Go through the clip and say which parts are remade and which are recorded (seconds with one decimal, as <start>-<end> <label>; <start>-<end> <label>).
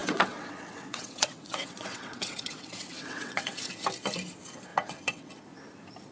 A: 0.0-3.7 remade; 3.7-4.7 recorded; 4.7-5.3 remade; 5.3-6.1 recorded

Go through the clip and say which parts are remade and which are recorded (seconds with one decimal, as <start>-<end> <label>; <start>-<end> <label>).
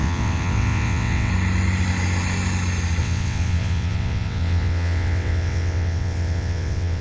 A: 0.0-1.3 remade; 1.3-3.0 recorded; 3.0-7.0 remade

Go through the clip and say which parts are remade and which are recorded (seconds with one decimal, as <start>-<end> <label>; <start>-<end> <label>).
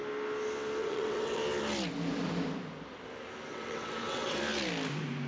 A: 0.0-0.8 recorded; 0.8-1.4 remade; 1.4-3.5 recorded; 3.5-4.4 remade; 4.4-5.3 recorded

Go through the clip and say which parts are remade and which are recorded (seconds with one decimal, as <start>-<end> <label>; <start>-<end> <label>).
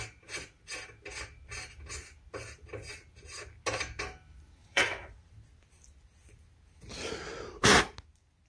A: 0.0-4.6 recorded; 4.6-5.3 remade; 5.3-8.5 recorded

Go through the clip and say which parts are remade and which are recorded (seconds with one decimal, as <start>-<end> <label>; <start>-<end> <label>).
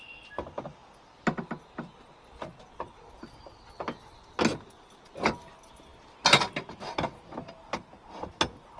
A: 0.0-8.8 recorded